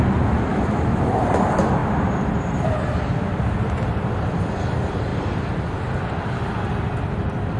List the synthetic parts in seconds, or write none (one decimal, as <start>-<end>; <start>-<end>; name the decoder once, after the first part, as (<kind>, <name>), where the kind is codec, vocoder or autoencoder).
0.5-1.2 (autoencoder, DAC-VAE)